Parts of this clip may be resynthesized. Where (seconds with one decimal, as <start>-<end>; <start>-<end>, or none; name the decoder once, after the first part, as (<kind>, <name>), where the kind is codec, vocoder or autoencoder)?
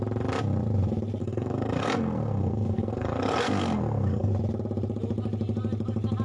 1.2-4.3 (codec, SNAC)